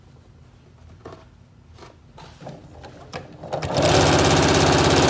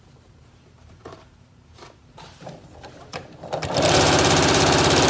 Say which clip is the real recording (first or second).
first